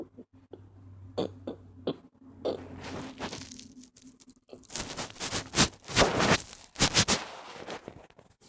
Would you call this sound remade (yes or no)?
no